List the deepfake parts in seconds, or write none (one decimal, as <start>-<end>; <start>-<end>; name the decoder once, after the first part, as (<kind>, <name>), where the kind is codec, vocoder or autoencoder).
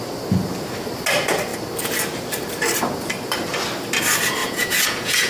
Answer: 4.4-5.3 (vocoder, Vocos)